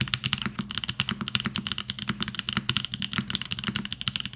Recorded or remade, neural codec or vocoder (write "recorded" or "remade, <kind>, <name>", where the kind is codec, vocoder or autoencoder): recorded